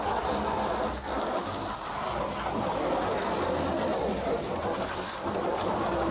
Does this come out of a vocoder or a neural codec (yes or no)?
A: yes